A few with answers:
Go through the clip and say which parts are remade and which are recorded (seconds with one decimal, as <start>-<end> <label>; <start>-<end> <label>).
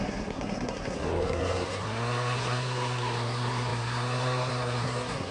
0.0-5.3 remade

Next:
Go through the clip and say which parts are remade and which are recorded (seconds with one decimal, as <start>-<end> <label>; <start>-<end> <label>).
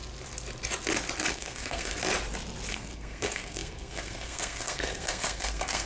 0.0-1.3 recorded; 1.3-2.0 remade; 2.0-2.7 recorded; 2.7-5.9 remade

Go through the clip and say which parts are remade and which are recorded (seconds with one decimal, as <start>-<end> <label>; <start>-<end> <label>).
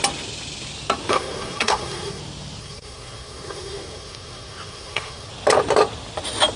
0.0-1.1 recorded; 1.1-2.2 remade; 2.2-2.6 recorded; 2.6-5.3 remade; 5.3-6.6 recorded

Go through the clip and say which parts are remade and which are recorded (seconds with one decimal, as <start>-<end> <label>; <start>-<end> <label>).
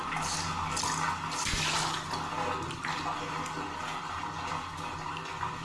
0.0-5.6 recorded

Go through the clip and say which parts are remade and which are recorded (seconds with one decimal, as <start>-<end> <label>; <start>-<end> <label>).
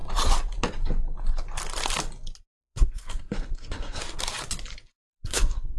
0.0-2.6 recorded; 2.6-4.0 remade; 4.0-5.0 recorded; 5.0-5.8 remade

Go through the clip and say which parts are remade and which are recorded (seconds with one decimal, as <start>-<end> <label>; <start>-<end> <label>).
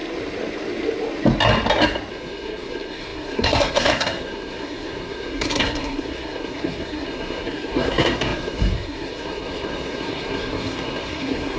0.0-2.1 recorded; 2.1-11.6 remade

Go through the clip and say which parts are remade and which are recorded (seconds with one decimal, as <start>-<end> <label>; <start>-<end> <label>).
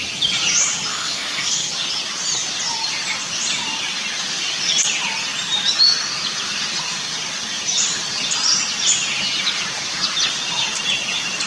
0.0-0.9 recorded; 0.9-1.7 remade; 1.7-11.5 recorded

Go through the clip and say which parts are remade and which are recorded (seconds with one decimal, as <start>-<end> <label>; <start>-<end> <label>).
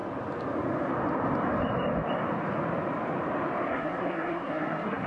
0.0-3.7 recorded; 3.7-5.1 remade